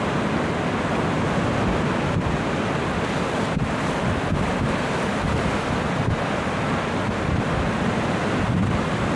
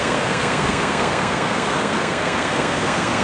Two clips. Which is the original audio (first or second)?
first